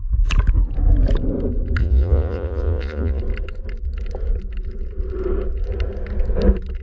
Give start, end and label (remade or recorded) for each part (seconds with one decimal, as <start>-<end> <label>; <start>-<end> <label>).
0.0-1.8 recorded; 1.8-3.2 remade; 3.2-6.8 recorded